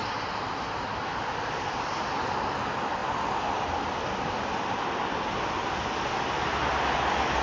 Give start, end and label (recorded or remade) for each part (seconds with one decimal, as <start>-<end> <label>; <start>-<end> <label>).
0.0-7.4 recorded